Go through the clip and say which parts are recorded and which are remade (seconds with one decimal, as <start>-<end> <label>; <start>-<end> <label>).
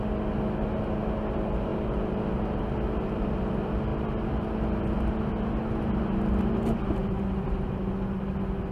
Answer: 0.0-7.0 recorded; 7.0-7.8 remade; 7.8-8.7 recorded